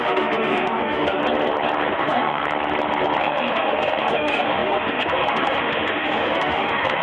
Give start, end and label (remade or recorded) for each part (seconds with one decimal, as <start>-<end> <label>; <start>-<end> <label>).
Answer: 0.0-1.2 remade; 1.2-1.9 recorded; 1.9-2.4 remade; 2.4-3.2 recorded; 3.2-7.0 remade